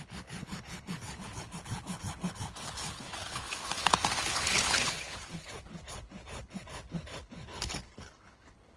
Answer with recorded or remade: remade